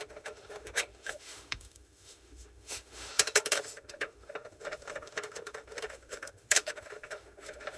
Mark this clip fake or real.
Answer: fake